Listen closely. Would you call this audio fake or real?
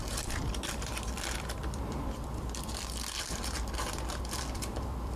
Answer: fake